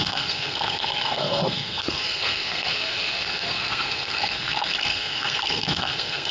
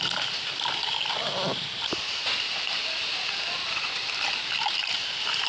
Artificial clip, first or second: first